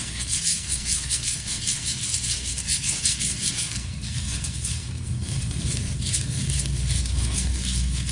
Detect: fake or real fake